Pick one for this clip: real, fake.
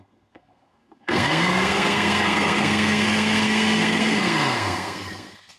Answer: fake